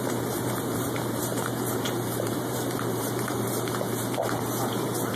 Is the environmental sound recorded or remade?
remade